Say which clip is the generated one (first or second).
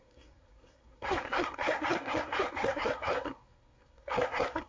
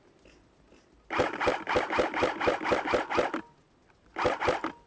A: first